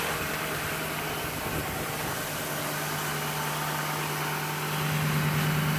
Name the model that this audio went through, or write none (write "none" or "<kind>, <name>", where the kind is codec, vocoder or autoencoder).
none